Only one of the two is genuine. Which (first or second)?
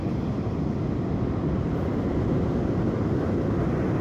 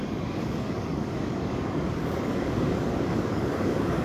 first